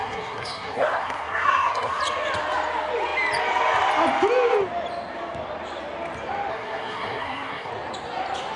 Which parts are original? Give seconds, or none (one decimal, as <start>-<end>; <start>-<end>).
2.0-6.5; 7.7-8.6